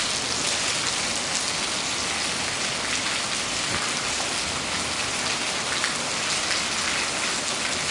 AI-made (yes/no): no